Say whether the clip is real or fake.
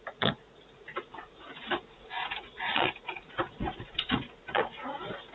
fake